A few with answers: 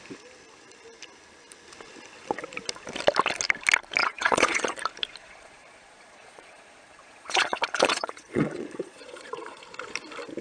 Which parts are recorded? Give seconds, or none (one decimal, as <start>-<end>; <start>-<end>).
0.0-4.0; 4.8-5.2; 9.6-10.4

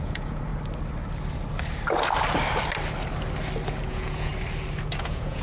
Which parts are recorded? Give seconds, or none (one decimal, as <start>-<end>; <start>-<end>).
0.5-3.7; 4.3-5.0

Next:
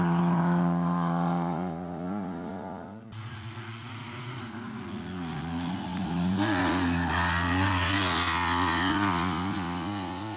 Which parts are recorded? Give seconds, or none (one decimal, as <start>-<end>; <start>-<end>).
none

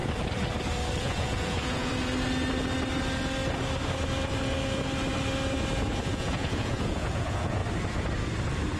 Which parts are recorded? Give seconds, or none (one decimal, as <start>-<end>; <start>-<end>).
0.0-1.0; 1.9-6.0; 7.6-8.8